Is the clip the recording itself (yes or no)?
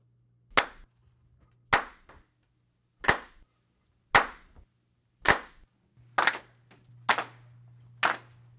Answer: yes